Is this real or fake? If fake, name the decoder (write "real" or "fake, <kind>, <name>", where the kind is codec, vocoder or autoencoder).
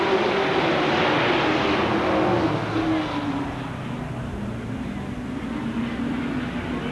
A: real